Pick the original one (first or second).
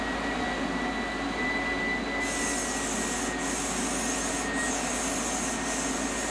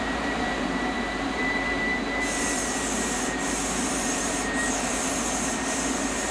first